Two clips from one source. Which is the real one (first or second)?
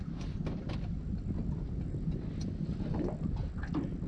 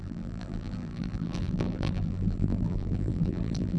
first